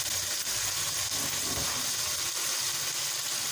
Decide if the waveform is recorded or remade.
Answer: recorded